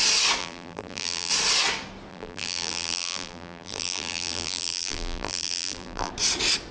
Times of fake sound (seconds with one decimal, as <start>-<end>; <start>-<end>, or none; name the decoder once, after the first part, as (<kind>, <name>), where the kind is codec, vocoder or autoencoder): 0.4-1.3 (vocoder, BigVGAN v2); 2.1-6.1